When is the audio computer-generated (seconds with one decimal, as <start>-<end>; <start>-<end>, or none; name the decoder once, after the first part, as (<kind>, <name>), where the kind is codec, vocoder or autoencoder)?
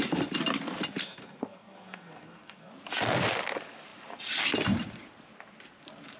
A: 1.0-2.7 (codec, SNAC)